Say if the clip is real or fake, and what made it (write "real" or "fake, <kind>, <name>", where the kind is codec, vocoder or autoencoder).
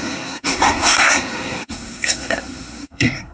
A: fake, codec, SNAC